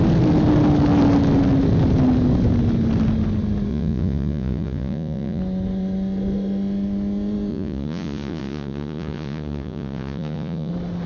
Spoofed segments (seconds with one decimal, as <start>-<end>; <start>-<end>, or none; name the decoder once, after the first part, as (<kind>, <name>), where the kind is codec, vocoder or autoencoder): 3.7-5.4 (vocoder, Vocos); 7.5-10.7